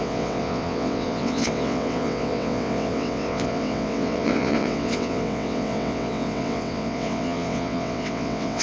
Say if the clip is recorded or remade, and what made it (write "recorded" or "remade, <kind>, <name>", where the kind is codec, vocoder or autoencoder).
remade, vocoder, WaveNeXt